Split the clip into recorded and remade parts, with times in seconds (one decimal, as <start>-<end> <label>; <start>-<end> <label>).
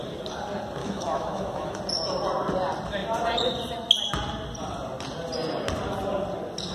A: 0.0-0.8 recorded; 0.8-1.8 remade; 1.8-6.7 recorded